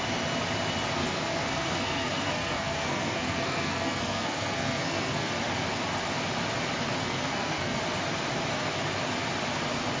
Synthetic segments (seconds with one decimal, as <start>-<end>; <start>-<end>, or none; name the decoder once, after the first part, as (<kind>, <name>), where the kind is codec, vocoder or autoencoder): 1.0-5.3 (codec, SNAC); 7.0-7.8